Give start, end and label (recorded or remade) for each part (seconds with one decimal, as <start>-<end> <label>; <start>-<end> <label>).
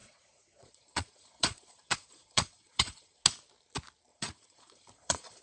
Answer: 0.0-3.2 remade; 3.2-4.1 recorded; 4.1-5.4 remade